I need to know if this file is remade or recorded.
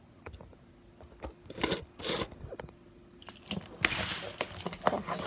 recorded